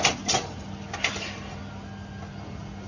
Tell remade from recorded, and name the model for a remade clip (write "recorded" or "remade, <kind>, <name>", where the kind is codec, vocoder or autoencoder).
recorded